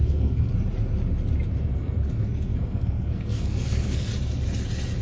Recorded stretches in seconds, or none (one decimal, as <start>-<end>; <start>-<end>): 0.5-1.5; 4.1-5.0